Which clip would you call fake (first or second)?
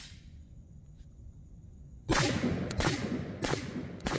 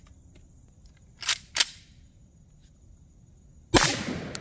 first